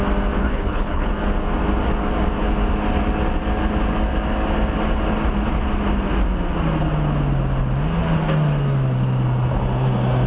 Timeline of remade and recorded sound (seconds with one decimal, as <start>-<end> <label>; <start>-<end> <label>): 0.0-0.4 recorded; 0.4-1.1 remade; 1.1-10.3 recorded